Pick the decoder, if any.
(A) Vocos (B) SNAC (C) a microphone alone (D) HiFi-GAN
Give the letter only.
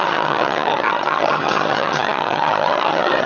D